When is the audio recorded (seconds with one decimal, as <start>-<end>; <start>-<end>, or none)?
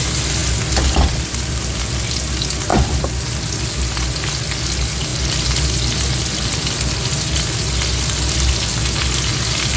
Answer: 0.0-9.8